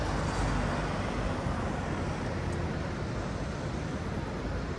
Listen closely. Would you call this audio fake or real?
real